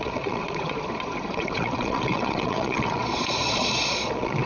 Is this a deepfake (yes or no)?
yes